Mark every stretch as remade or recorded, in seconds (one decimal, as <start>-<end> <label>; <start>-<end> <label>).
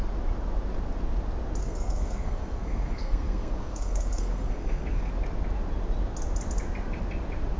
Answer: 0.0-1.6 recorded; 1.6-5.1 remade; 5.1-7.6 recorded